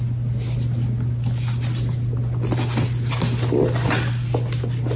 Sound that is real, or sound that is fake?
real